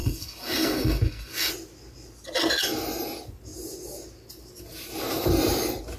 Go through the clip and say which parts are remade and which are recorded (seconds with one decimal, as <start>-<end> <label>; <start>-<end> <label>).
0.0-1.5 remade; 1.5-6.0 recorded